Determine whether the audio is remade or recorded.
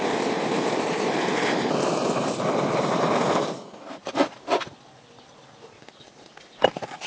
recorded